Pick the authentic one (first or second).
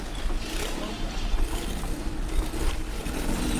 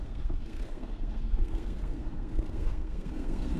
first